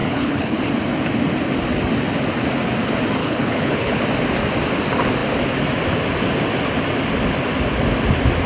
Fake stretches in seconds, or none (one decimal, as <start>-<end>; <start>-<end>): 0.0-0.7; 3.2-4.0